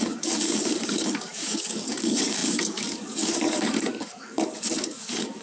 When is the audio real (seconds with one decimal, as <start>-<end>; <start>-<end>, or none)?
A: none